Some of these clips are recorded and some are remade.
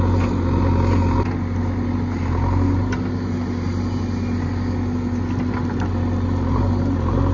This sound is recorded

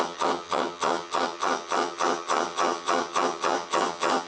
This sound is remade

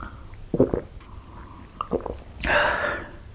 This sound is recorded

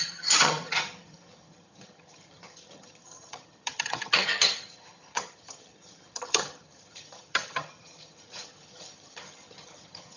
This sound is remade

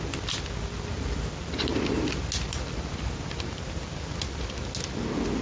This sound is recorded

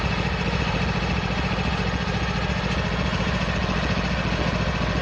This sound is recorded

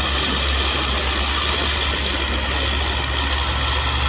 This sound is recorded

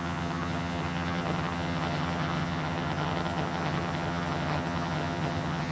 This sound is remade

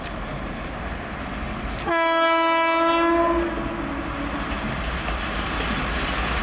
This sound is recorded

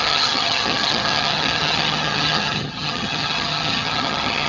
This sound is remade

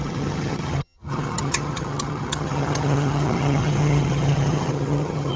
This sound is remade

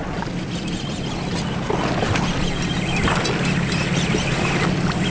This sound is recorded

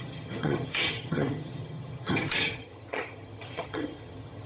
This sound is remade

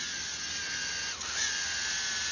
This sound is recorded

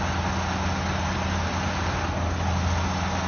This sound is recorded